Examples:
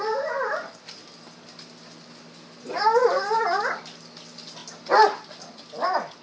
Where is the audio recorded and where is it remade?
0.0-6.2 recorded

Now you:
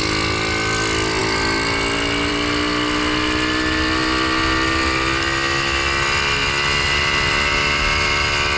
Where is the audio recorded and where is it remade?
0.0-8.6 recorded